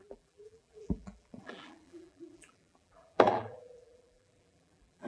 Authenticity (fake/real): fake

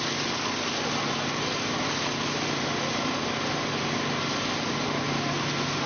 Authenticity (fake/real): real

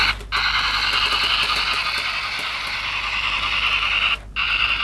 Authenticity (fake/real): real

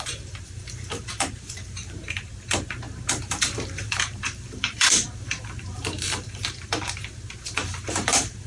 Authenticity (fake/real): fake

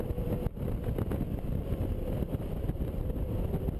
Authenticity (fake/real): fake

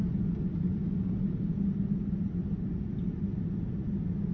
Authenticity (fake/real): real